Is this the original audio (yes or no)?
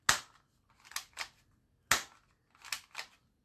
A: yes